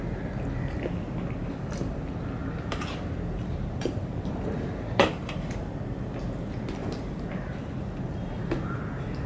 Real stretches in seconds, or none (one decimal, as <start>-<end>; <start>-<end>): 0.0-2.4; 5.1-6.8; 8.8-9.3